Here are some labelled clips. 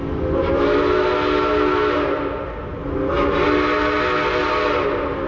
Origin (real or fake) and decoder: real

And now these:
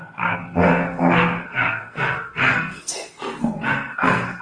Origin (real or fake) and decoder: fake, codec, SNAC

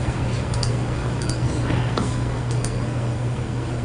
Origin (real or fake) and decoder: fake, codec, SNAC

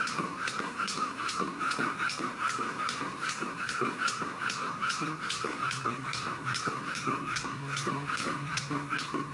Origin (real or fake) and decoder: fake, codec, SNAC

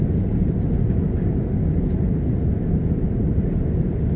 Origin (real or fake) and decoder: real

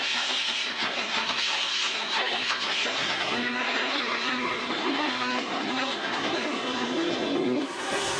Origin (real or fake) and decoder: fake, codec, SNAC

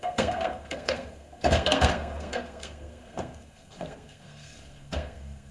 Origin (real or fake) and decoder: fake, codec, SNAC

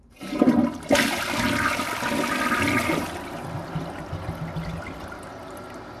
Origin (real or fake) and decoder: real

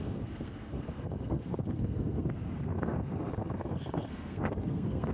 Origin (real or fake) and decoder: fake, codec, SNAC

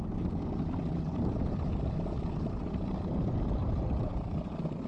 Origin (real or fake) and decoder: real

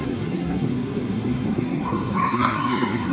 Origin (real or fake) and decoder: fake, codec, SNAC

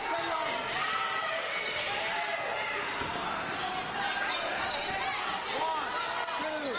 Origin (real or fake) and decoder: real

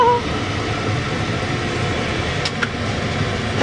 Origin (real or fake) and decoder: real